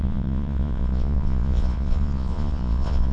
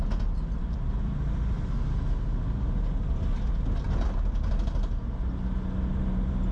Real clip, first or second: second